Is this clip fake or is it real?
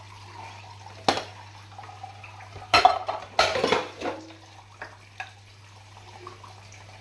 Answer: real